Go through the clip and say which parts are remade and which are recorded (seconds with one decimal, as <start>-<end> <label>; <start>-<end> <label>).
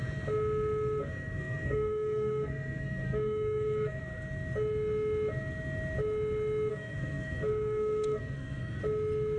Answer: 0.0-1.0 recorded; 1.0-4.0 remade; 4.0-6.7 recorded; 6.7-8.8 remade; 8.8-9.4 recorded